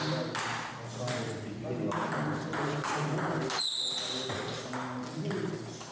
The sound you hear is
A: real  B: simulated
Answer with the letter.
A